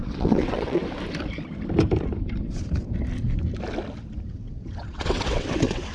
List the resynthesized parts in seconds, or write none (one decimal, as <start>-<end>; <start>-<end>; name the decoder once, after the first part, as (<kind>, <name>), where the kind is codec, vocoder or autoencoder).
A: 0.0-0.8 (vocoder, WaveNeXt); 4.3-5.9